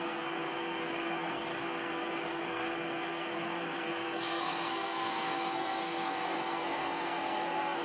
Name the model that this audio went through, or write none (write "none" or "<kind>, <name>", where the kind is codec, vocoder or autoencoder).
codec, SNAC